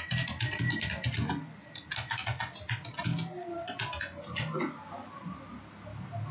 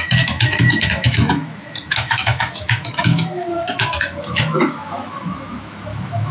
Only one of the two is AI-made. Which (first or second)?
second